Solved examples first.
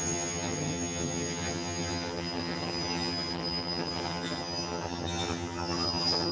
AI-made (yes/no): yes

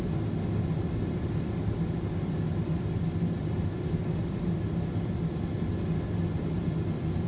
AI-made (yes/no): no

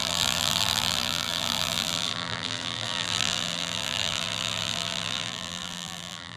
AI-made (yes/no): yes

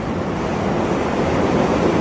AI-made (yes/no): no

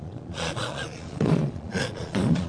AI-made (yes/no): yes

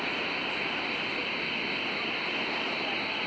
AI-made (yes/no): no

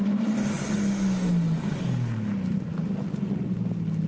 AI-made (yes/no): no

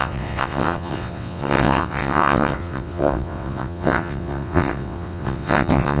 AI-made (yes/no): yes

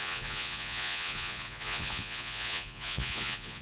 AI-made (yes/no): yes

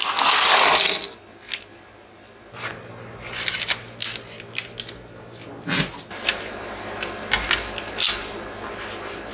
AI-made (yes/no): no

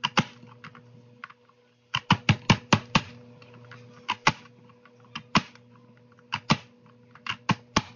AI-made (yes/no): no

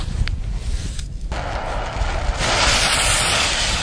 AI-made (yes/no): no